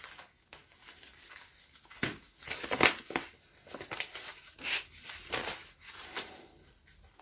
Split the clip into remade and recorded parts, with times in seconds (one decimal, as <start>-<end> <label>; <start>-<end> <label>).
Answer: 0.0-7.2 recorded